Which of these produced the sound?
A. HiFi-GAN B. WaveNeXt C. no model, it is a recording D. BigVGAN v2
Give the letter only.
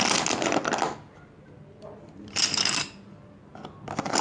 C